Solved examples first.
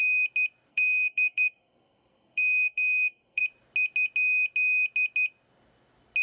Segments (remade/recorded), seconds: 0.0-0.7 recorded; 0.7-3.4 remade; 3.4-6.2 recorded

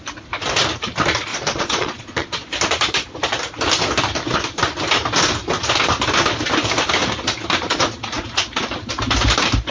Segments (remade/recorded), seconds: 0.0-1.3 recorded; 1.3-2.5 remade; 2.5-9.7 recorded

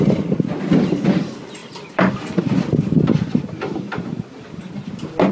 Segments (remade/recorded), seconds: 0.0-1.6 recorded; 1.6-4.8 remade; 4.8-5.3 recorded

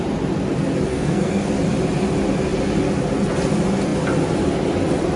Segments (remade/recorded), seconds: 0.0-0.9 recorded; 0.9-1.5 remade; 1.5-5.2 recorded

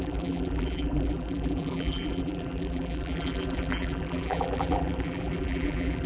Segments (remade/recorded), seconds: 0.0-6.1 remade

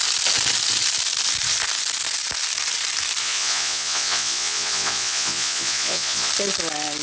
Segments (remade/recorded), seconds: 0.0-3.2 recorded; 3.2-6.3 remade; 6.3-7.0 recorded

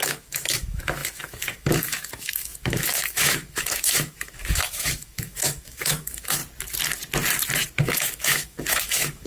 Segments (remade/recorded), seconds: 0.0-6.4 remade; 6.4-7.8 recorded; 7.8-9.3 remade

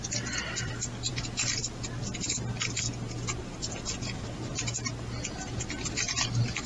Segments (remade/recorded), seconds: 0.0-6.7 recorded